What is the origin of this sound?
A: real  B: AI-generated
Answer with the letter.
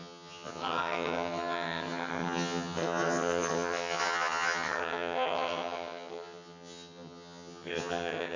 B